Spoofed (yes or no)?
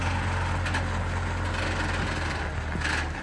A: no